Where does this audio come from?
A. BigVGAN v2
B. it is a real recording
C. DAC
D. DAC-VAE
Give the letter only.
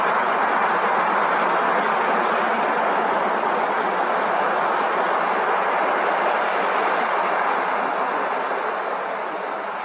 B